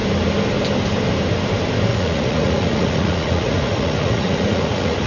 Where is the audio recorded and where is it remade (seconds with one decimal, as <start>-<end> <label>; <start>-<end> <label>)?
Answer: 0.0-1.9 recorded; 1.9-5.1 remade